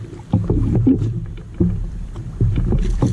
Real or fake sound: fake